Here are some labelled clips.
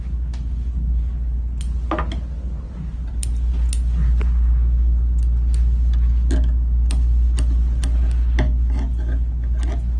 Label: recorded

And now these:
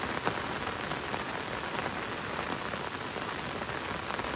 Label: recorded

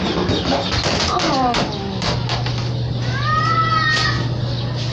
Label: recorded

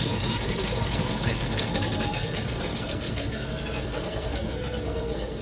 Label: remade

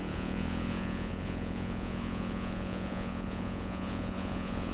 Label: remade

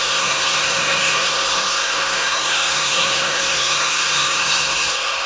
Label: remade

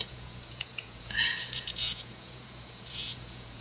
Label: remade